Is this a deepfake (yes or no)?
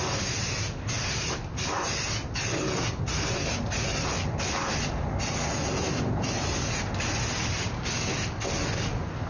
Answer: no